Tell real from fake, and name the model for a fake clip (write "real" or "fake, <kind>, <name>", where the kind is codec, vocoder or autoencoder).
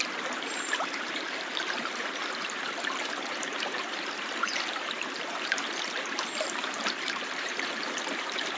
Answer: fake, vocoder, BigVGAN v2